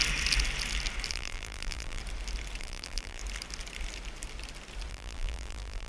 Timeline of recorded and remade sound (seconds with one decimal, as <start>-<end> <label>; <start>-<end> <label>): 0.0-1.1 recorded; 1.1-2.0 remade; 2.0-2.6 recorded; 2.6-3.2 remade; 3.2-4.9 recorded; 4.9-5.9 remade